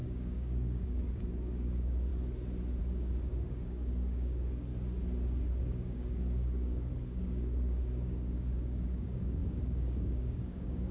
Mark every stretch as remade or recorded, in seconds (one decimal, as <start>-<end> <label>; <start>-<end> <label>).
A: 0.0-2.1 remade; 2.1-2.8 recorded; 2.8-4.7 remade; 4.7-5.5 recorded; 5.5-10.9 remade